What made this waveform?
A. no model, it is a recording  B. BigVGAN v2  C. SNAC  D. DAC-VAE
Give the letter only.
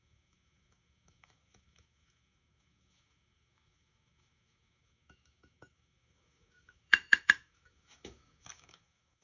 D